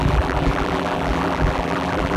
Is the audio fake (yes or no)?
yes